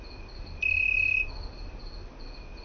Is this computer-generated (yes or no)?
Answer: no